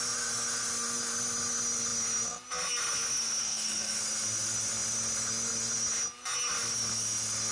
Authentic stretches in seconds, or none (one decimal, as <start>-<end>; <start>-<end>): 0.0-3.4; 4.0-7.5